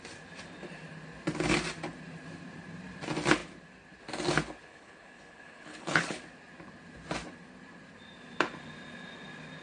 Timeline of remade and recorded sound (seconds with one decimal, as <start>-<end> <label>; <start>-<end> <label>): 0.0-4.6 recorded; 4.6-6.2 remade; 6.2-9.6 recorded